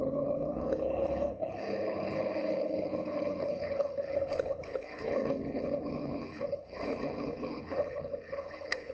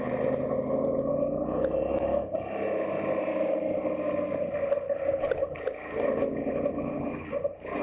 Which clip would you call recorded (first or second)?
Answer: second